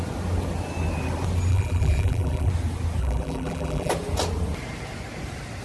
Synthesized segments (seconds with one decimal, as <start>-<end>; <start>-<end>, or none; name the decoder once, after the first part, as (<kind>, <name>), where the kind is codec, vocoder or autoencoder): 1.5-2.5 (vocoder, BigVGAN v2); 3.0-3.9